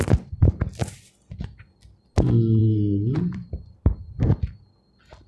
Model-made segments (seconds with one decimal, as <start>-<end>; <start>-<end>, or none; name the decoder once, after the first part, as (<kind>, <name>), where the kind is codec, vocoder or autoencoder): 2.6-4.0 (vocoder, BigVGAN v2)